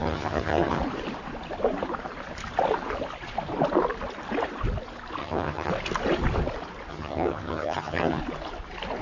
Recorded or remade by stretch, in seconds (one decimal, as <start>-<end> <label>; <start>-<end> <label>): 0.0-0.8 remade; 0.8-5.2 recorded; 5.2-5.7 remade; 5.7-6.9 recorded; 6.9-8.2 remade; 8.2-9.0 recorded